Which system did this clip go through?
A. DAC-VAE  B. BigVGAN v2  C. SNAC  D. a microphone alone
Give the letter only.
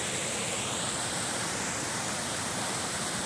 B